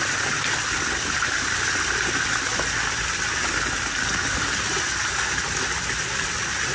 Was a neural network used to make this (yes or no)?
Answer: no